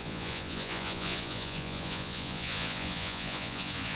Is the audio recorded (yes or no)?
no